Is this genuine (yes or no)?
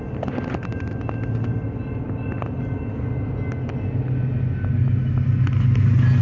yes